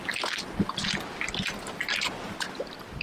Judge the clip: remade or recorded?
recorded